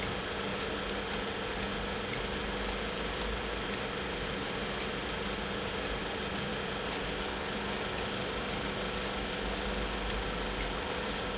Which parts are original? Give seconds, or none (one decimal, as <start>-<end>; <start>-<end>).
0.0-11.4